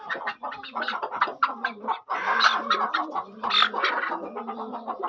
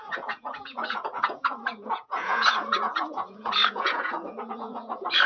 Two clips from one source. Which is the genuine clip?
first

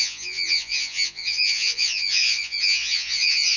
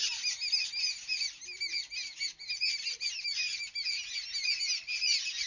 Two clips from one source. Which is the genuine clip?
second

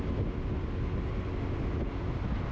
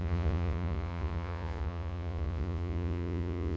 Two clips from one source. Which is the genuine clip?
first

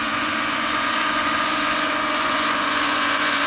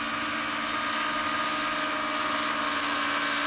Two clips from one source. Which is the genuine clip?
second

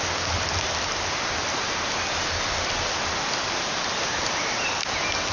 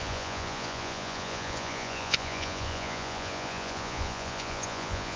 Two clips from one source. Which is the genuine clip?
first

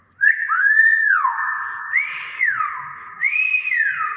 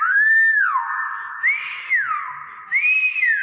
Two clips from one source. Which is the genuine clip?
second